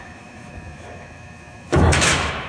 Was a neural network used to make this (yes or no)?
yes